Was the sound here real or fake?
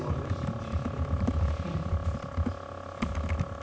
real